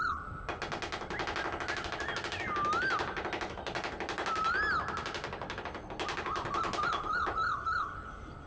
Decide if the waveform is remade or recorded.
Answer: recorded